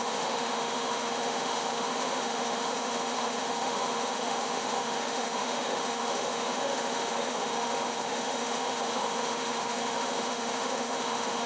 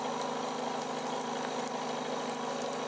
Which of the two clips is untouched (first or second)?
second